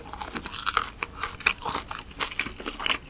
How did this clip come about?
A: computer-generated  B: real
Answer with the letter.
B